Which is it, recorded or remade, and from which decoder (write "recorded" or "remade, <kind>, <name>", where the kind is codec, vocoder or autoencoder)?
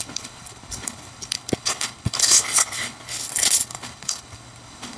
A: remade, codec, HILCodec